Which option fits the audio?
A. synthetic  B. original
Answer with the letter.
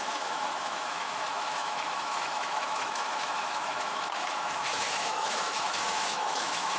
A